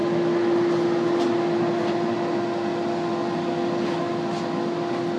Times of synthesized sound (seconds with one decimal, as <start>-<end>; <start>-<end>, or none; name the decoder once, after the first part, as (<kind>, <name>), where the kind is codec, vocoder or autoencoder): none